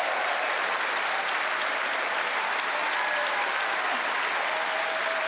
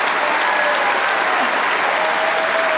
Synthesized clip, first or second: first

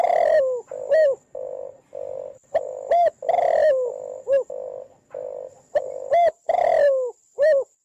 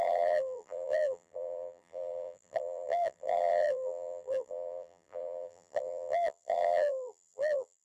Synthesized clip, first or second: second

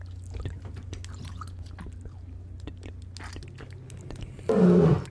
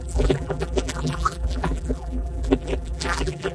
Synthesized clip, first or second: second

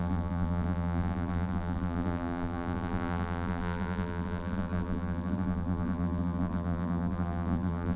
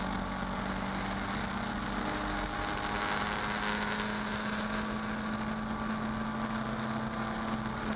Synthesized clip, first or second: first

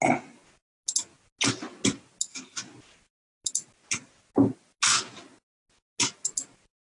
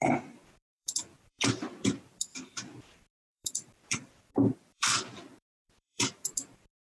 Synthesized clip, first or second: second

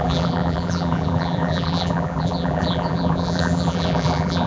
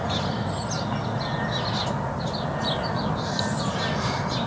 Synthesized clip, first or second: first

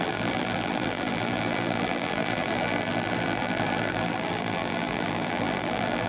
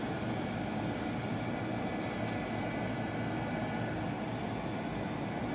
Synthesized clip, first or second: first